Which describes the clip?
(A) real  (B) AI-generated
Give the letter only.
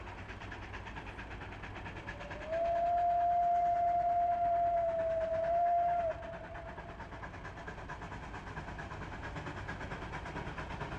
A